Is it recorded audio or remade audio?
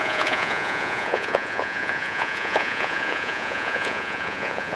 remade